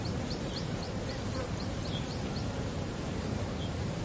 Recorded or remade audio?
remade